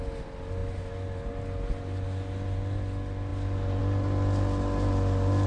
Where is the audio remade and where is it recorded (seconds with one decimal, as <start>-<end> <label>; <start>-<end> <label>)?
0.0-5.5 recorded